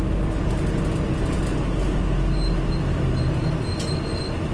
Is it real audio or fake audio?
real